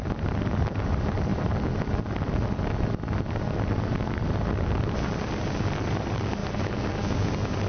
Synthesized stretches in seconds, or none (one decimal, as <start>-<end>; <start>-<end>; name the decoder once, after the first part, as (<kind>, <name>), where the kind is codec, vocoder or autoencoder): 0.0-1.3 (vocoder, BigVGAN v2); 5.9-6.4